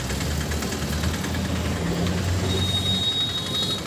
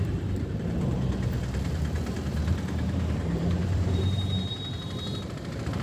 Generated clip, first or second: second